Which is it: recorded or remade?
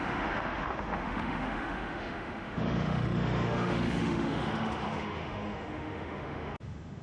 remade